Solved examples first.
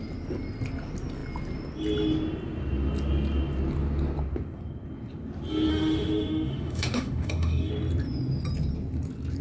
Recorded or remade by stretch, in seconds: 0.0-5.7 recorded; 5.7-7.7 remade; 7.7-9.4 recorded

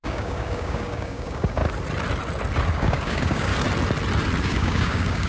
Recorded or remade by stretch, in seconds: 0.0-1.6 remade; 1.6-2.7 recorded; 2.7-3.5 remade; 3.5-4.4 recorded; 4.4-5.3 remade

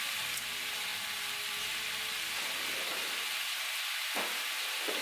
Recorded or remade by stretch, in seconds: 0.0-0.9 remade; 0.9-3.9 recorded; 3.9-5.0 remade

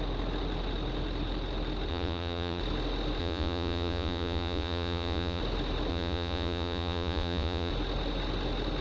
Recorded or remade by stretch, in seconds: 0.0-1.9 recorded; 1.9-2.6 remade; 2.6-3.2 recorded; 3.2-5.4 remade; 5.4-5.9 recorded; 5.9-7.7 remade; 7.7-8.8 recorded

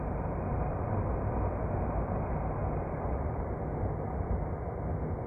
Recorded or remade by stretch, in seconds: 0.0-5.3 recorded

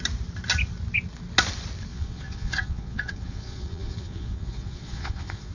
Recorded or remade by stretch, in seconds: 0.0-1.9 recorded; 1.9-5.5 remade